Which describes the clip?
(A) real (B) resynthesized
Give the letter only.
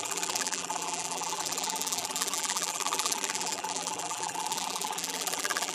B